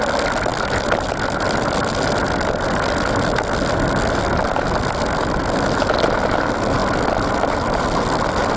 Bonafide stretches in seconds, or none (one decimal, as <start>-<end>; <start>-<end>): 0.0-8.6